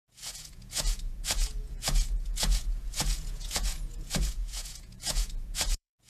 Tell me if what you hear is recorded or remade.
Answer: remade